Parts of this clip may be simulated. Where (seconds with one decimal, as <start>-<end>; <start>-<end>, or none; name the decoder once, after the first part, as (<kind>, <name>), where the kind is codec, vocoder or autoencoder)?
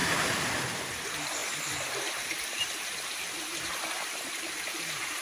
0.6-5.2 (vocoder, BigVGAN v2)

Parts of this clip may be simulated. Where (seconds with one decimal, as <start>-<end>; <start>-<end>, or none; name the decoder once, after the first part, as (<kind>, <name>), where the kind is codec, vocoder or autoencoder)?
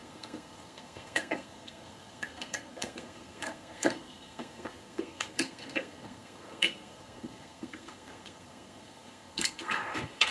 0.0-10.3 (codec, SNAC)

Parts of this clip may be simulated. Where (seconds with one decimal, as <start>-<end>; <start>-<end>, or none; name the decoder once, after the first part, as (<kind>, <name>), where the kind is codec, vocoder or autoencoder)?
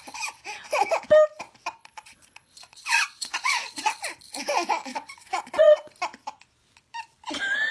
1.8-3.9 (vocoder, Vocos); 4.9-5.9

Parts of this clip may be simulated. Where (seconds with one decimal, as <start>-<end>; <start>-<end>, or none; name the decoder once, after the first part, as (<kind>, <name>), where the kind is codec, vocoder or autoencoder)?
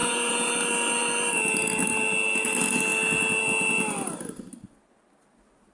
0.0-0.5 (vocoder, Vocos)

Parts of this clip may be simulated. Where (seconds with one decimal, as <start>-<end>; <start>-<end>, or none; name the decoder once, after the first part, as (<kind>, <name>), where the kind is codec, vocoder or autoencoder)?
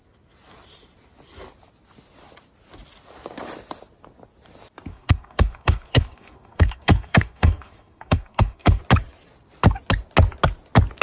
4.9-8.8 (codec, SNAC)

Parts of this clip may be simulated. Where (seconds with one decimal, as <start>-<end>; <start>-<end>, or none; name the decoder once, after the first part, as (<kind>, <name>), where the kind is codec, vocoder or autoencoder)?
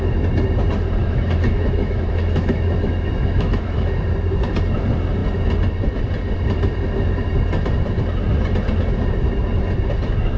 1.0-4.0 (autoencoder, DAC-VAE)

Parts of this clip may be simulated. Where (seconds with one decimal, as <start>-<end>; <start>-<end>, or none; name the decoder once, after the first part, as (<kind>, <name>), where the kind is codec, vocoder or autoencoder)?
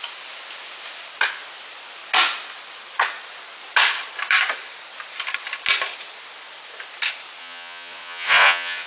7.4-8.9 (vocoder, Vocos)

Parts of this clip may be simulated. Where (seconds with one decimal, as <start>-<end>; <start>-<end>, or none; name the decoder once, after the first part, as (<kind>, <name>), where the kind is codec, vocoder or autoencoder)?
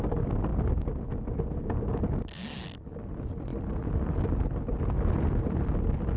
none